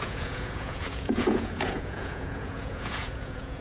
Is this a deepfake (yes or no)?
yes